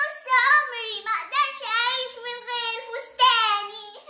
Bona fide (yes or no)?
yes